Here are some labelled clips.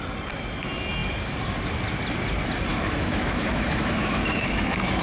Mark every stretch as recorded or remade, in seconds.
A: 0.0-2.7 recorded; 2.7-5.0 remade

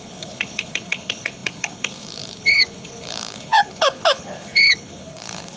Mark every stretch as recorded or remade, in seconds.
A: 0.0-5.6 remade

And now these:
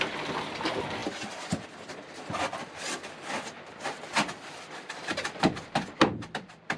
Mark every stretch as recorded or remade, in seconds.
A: 0.0-6.8 recorded